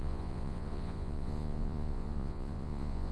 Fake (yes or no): yes